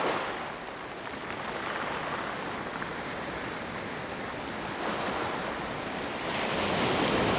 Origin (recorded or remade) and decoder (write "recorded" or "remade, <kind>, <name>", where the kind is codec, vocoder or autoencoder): recorded